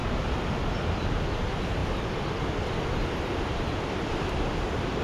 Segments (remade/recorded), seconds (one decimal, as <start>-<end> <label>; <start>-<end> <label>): 0.0-5.0 recorded